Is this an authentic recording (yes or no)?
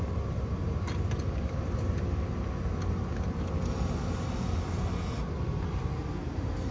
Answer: yes